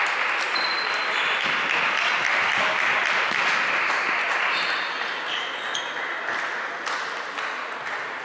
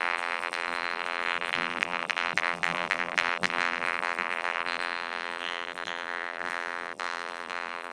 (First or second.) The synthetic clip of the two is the second